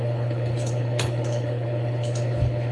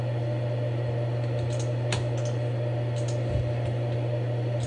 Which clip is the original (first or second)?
second